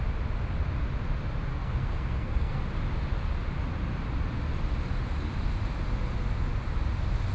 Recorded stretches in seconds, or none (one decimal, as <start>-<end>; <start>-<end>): 0.0-1.5; 2.6-7.3